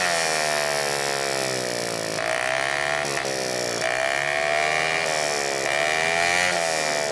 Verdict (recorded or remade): recorded